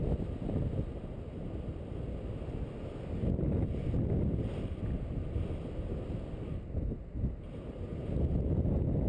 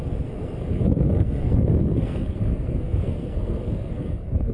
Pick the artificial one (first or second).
second